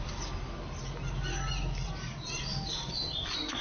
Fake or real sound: fake